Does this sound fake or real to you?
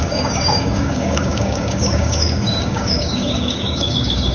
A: fake